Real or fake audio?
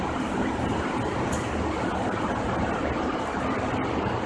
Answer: real